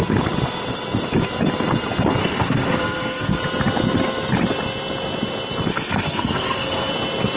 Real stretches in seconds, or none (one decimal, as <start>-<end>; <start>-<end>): 0.0-2.2; 3.4-5.7; 6.9-7.4